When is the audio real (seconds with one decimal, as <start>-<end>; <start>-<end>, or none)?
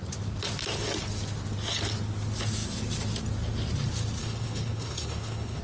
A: 0.0-4.2